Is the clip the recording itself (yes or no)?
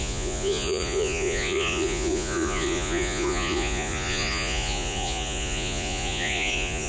no